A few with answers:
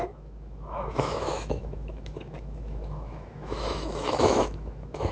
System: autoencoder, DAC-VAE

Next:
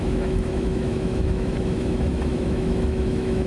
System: autoencoder, DAC-VAE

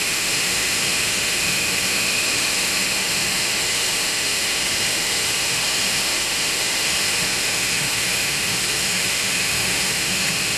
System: autoencoder, DAC-VAE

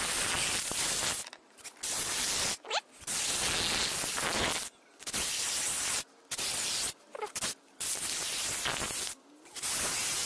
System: none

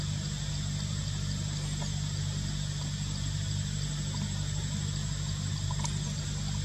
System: none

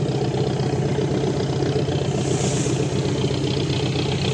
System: none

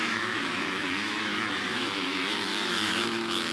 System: autoencoder, DAC-VAE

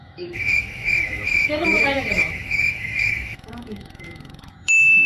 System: autoencoder, DAC-VAE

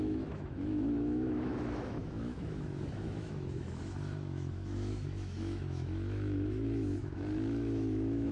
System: autoencoder, DAC-VAE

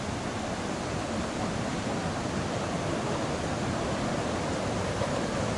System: none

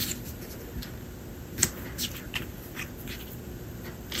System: none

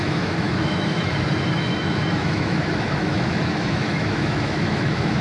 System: autoencoder, DAC-VAE